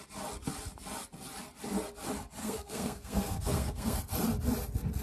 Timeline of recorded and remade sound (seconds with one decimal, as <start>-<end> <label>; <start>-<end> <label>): 0.0-2.4 recorded; 2.4-4.0 remade; 4.0-5.0 recorded